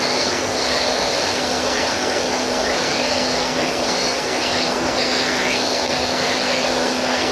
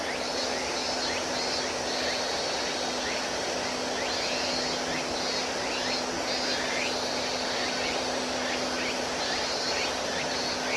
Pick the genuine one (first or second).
second